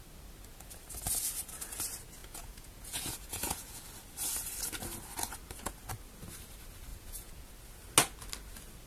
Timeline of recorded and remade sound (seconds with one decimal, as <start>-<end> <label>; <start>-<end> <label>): 0.0-2.2 recorded; 2.2-3.8 remade; 3.8-6.9 recorded; 6.9-7.5 remade; 7.5-8.9 recorded